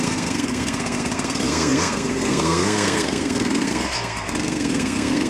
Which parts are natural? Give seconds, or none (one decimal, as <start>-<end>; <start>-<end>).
none